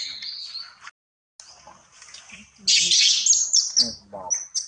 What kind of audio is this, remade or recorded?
recorded